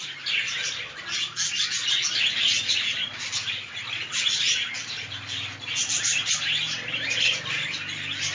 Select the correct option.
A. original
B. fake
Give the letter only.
A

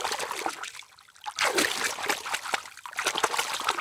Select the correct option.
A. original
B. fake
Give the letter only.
A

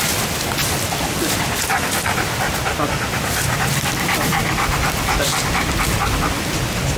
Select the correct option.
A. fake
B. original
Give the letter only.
A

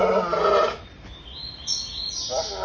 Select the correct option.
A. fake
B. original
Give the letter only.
B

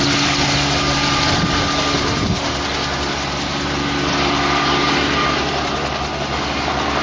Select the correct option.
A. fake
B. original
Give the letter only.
B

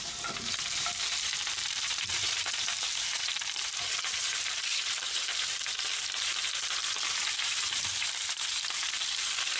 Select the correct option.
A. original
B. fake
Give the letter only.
B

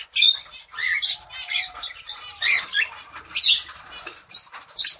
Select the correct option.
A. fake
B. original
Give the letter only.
A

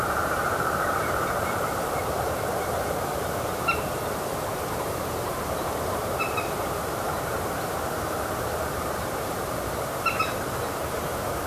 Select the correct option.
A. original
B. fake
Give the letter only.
B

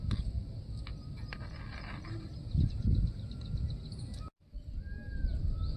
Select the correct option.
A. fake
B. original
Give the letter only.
B